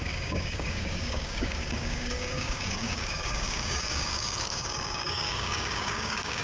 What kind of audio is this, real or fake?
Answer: fake